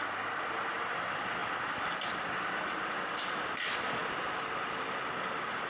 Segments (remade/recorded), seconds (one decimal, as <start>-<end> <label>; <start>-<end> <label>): 0.0-5.7 recorded